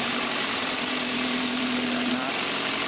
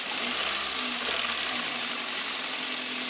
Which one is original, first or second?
second